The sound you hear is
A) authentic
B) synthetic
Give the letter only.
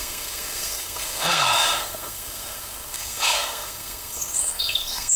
B